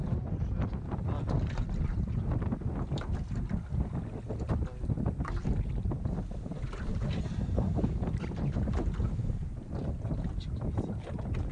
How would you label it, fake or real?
real